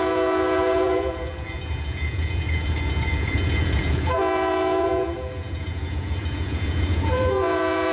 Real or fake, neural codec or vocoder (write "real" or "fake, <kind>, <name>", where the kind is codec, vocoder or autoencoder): fake, vocoder, Vocos